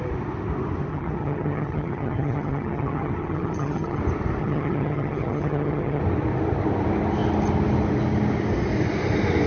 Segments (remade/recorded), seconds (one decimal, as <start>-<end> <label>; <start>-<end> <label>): 0.0-0.9 recorded; 0.9-4.0 remade; 4.0-4.4 recorded; 4.4-6.0 remade; 6.0-9.5 recorded